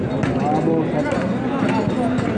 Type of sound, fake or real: real